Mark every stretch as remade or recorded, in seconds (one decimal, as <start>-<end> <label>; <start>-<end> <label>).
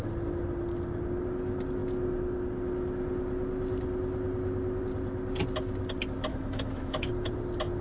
0.0-6.3 recorded; 6.3-7.1 remade; 7.1-7.8 recorded